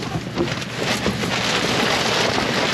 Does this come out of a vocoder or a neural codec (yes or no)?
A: no